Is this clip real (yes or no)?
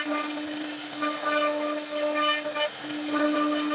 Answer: yes